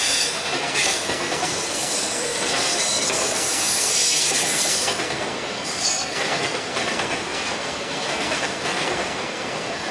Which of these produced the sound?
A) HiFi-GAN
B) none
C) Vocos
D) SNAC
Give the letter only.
D